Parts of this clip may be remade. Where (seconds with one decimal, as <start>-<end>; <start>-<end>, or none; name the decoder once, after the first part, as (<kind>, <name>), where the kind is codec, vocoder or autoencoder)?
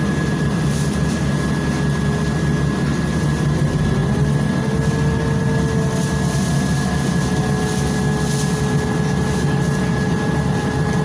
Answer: none